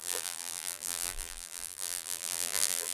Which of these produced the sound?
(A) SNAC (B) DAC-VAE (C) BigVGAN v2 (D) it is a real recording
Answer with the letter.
C